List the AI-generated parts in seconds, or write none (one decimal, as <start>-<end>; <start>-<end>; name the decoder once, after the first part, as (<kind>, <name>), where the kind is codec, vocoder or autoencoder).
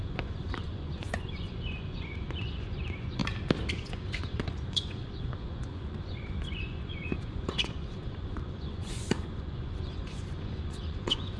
0.0-3.2 (vocoder, Vocos); 3.7-11.4